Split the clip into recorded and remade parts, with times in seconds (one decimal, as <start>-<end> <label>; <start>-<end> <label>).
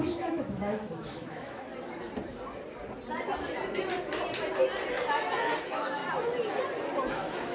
0.0-1.7 remade; 1.7-5.6 recorded; 5.6-6.0 remade; 6.0-7.1 recorded; 7.1-7.5 remade